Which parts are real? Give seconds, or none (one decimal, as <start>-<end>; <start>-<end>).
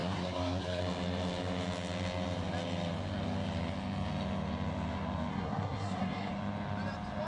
0.8-5.3; 6.3-7.3